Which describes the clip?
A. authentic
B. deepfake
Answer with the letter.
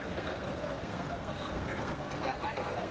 B